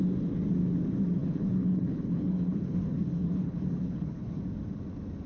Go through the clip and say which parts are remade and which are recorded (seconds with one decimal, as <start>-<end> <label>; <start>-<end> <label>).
0.0-1.2 recorded; 1.2-4.4 remade; 4.4-5.3 recorded